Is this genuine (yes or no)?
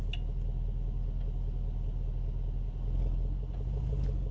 yes